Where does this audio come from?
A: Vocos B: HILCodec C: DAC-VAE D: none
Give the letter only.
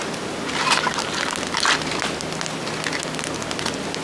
D